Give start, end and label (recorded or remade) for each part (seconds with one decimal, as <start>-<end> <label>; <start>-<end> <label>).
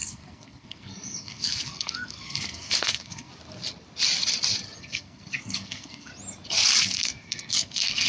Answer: 0.0-3.3 remade; 3.3-4.8 recorded; 4.8-6.1 remade; 6.1-6.8 recorded; 6.8-8.1 remade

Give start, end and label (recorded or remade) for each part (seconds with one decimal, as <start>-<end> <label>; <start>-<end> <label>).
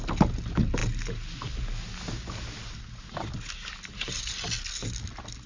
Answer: 0.0-5.5 recorded